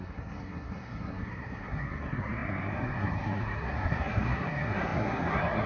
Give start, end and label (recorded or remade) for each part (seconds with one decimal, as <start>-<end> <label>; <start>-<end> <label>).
0.0-5.7 remade